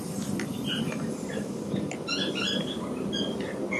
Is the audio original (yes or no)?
yes